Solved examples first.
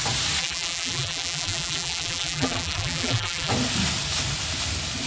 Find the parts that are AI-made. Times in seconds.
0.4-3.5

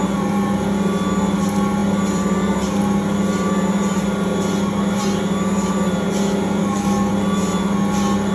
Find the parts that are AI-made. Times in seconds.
6.6-7.1